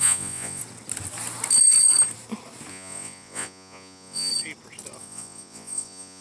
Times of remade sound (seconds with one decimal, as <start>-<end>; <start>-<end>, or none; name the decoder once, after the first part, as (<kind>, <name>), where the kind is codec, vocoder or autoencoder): 0.0-0.6 (vocoder, Vocos); 2.7-4.3; 5.0-6.2